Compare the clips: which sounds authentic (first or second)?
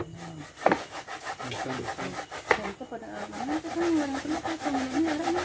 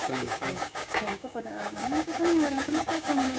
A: first